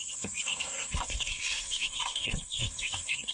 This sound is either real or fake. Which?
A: fake